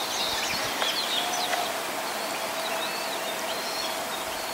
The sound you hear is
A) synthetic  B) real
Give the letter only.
B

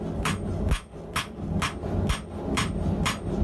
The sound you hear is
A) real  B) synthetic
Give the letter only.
A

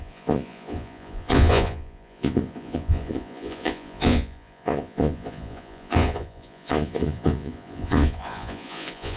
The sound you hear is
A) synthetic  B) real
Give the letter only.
A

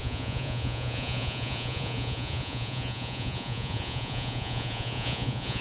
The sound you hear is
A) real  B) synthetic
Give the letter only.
B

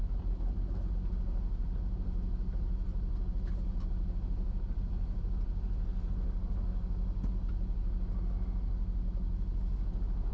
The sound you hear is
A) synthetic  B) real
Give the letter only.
B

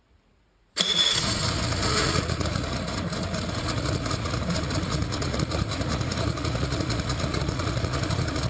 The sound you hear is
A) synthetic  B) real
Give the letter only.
A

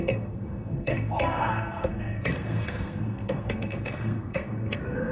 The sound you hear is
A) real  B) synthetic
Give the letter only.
B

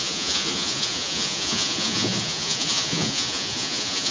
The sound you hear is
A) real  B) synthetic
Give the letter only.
B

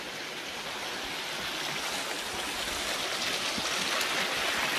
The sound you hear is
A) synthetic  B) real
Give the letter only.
B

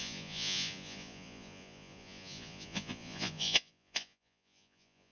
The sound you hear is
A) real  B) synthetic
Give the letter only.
B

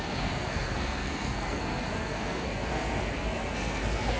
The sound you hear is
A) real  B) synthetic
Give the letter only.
B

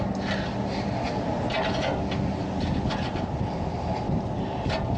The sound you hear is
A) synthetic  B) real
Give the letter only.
B